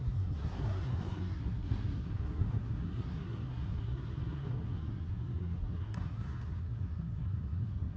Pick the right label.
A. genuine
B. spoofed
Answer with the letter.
B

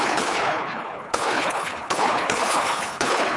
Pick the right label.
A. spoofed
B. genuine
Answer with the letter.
A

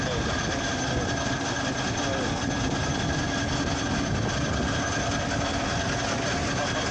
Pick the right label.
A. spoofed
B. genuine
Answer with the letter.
B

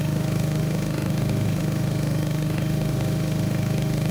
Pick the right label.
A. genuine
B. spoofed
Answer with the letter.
B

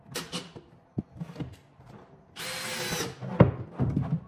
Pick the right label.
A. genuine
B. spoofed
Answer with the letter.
A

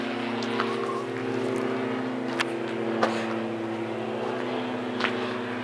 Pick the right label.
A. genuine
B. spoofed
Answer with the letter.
A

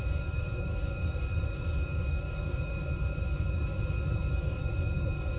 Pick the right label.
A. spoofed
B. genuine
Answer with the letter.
A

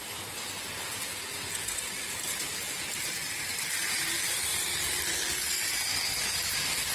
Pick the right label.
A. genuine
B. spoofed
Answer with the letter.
A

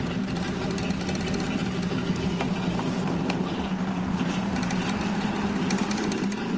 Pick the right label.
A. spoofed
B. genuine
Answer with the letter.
B